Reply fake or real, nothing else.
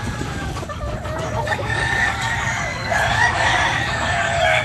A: fake